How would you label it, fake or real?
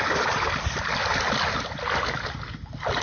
real